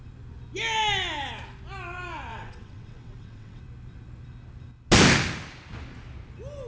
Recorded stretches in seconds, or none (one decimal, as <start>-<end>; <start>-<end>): 0.0-2.3; 3.6-6.7